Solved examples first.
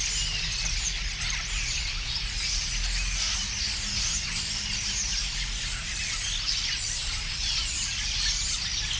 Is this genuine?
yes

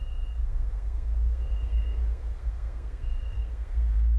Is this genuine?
no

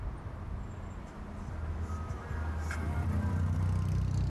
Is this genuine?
yes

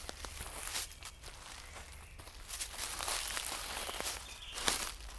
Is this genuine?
yes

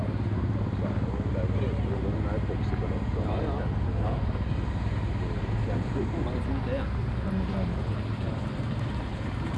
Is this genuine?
yes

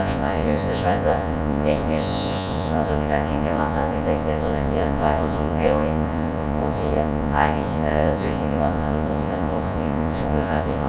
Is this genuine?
no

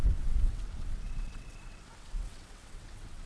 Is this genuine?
no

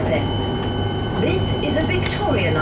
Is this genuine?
yes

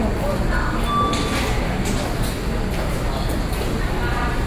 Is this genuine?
yes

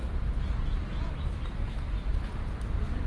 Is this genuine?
yes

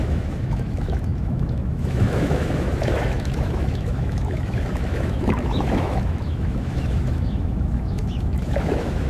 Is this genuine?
no